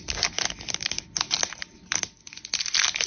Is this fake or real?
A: real